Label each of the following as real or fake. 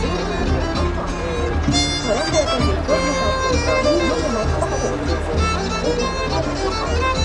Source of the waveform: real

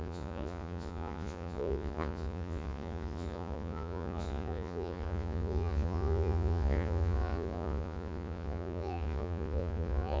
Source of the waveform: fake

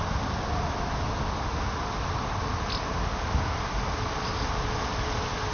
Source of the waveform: real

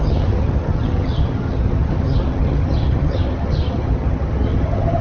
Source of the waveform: fake